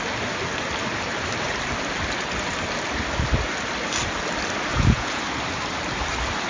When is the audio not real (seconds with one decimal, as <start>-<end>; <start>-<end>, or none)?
4.7-5.2